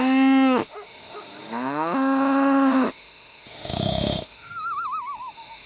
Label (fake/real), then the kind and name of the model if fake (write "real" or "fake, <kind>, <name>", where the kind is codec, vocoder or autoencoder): fake, autoencoder, DAC-VAE